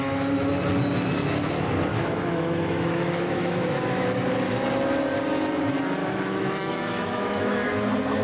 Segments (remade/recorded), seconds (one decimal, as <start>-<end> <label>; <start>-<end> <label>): 0.0-1.9 recorded; 1.9-4.2 remade; 4.2-6.0 recorded; 6.0-7.7 remade; 7.7-8.2 recorded